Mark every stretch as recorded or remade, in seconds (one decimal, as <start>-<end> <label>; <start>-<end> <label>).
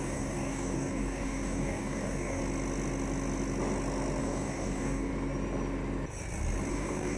0.0-2.4 remade; 2.4-4.2 recorded; 4.2-5.1 remade; 5.1-6.7 recorded; 6.7-7.2 remade